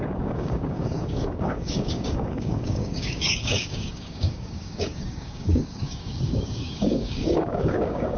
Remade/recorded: remade